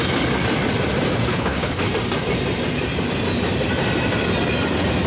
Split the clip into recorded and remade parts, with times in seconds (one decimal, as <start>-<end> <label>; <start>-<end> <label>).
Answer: 0.0-1.3 recorded; 1.3-1.9 remade; 1.9-5.1 recorded